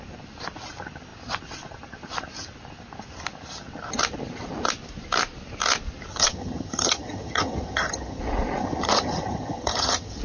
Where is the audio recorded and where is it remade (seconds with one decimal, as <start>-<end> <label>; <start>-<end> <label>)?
0.0-6.1 recorded; 6.1-8.2 remade; 8.2-8.6 recorded; 8.6-10.2 remade